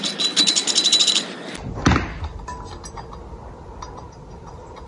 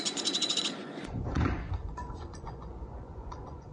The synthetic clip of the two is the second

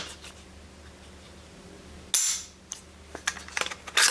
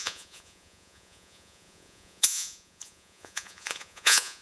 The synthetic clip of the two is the second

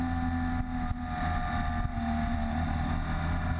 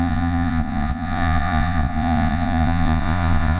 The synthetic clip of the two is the second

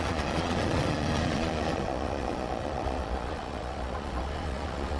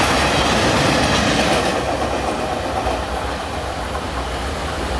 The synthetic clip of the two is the first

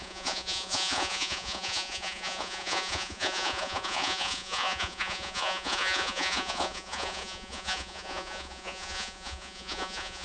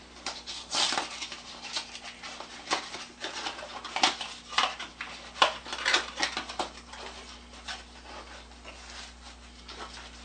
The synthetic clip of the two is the first